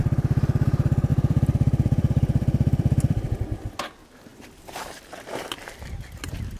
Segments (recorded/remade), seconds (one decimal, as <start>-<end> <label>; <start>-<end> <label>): 0.0-1.1 recorded; 1.1-3.7 remade; 3.7-4.3 recorded; 4.3-5.0 remade; 5.0-6.6 recorded

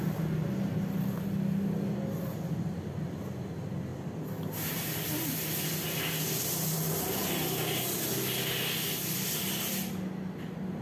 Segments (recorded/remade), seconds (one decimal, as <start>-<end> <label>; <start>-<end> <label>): 0.0-10.8 recorded